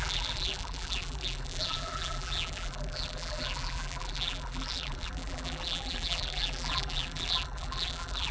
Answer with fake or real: fake